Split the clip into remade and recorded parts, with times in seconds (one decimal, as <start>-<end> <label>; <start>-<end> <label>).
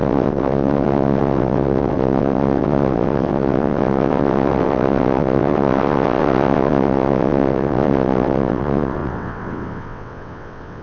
0.0-10.8 remade